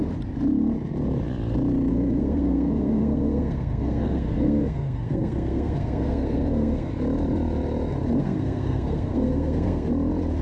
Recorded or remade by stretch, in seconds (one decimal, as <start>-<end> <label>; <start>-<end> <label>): 0.0-1.9 recorded; 1.9-6.9 remade; 6.9-8.2 recorded; 8.2-9.9 remade; 9.9-10.4 recorded